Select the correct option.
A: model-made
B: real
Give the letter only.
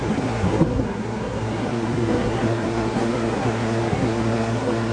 A